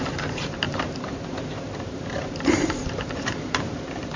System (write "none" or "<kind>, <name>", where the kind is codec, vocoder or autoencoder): vocoder, BigVGAN v2